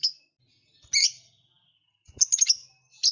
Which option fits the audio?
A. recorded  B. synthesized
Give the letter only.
A